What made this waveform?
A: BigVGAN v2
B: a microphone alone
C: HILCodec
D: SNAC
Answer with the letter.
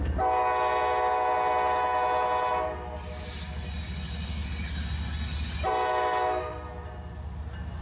B